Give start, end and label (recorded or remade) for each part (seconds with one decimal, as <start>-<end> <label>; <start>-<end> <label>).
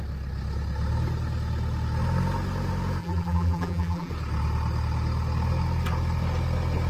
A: 0.0-3.0 recorded; 3.0-4.1 remade; 4.1-6.9 recorded